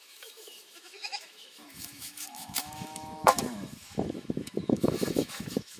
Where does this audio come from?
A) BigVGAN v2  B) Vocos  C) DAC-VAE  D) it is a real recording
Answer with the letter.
C